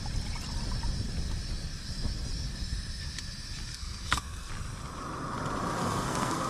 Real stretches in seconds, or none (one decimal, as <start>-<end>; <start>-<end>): 0.0-3.7; 4.5-5.8